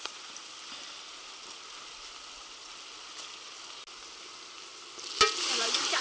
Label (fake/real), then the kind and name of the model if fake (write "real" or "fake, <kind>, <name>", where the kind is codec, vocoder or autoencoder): real